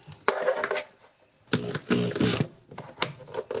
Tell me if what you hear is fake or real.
real